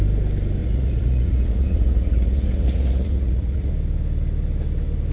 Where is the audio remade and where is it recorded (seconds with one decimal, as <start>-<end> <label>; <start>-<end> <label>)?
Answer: 0.0-0.6 recorded; 0.6-3.7 remade; 3.7-5.1 recorded